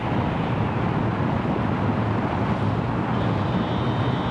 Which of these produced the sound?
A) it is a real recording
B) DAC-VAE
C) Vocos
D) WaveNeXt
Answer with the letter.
A